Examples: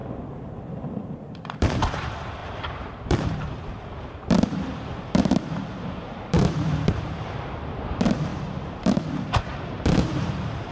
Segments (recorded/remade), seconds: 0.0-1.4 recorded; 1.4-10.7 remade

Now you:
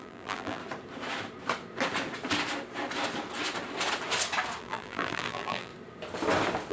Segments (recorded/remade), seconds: 0.0-0.6 remade; 0.6-4.6 recorded; 4.6-5.7 remade; 5.7-6.7 recorded

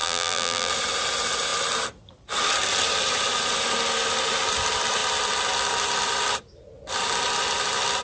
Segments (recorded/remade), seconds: 0.0-0.7 remade; 0.7-8.0 recorded

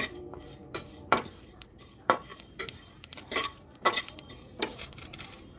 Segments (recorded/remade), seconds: 0.0-5.6 remade